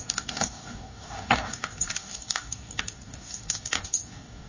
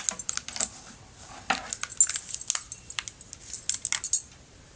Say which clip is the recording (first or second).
second